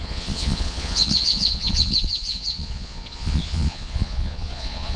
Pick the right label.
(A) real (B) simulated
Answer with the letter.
B